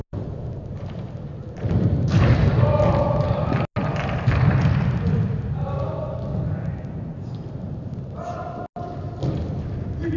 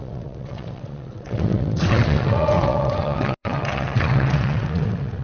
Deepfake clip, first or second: second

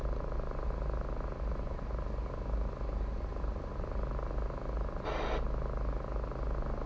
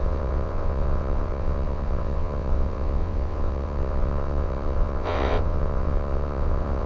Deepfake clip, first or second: second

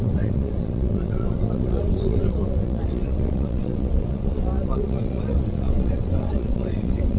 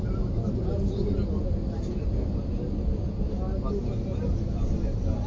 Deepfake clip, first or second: first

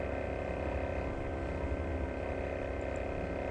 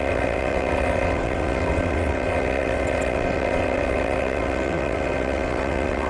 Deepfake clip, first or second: second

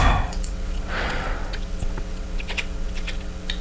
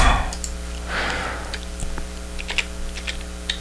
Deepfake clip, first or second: first